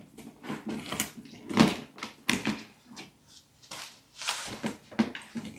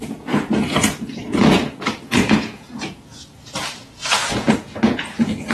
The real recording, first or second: first